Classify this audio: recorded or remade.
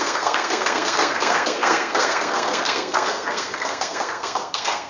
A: remade